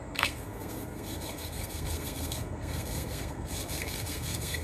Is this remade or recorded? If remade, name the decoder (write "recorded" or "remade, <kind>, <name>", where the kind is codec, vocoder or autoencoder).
remade, codec, SNAC